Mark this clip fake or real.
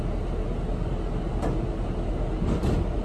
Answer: real